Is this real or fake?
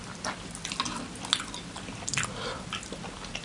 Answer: real